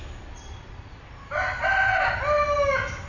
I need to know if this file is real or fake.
real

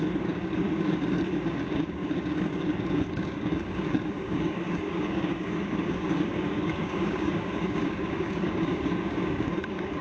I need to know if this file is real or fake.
fake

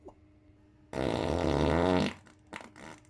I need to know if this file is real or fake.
real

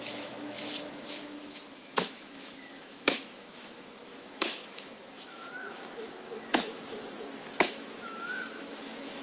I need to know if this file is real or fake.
fake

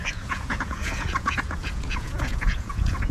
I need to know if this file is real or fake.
fake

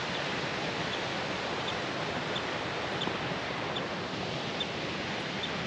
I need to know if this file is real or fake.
real